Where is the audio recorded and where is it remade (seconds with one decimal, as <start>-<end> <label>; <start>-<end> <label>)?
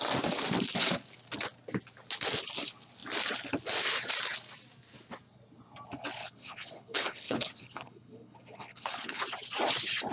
0.0-6.2 recorded; 6.2-9.2 remade; 9.2-10.1 recorded